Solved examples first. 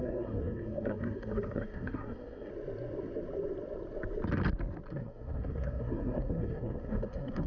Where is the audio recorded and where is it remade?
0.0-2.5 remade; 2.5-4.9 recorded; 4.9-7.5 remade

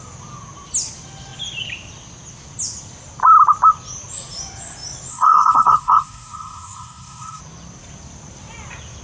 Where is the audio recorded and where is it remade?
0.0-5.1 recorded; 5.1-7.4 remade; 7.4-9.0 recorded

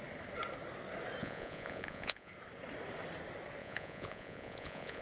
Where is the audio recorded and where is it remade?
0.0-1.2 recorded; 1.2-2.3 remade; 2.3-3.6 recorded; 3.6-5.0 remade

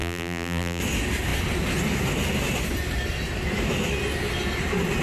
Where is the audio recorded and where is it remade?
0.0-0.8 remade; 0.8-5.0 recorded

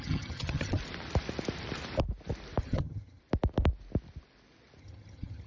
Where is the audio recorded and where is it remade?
0.0-0.8 remade; 0.8-2.6 recorded; 2.6-3.2 remade; 3.2-4.8 recorded; 4.8-5.5 remade

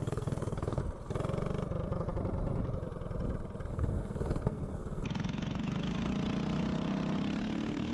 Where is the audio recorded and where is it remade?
0.0-0.8 remade; 0.8-3.7 recorded; 3.7-6.1 remade; 6.1-7.4 recorded; 7.4-7.9 remade

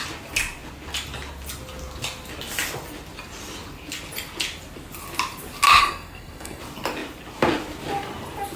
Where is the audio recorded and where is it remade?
0.0-5.8 recorded; 5.8-6.6 remade; 6.6-8.6 recorded

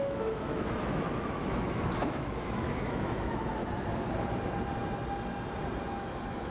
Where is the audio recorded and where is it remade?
0.0-3.6 remade; 3.6-5.8 recorded; 5.8-6.5 remade